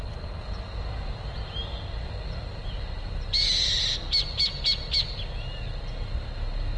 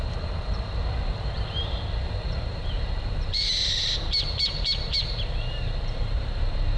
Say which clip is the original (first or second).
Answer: first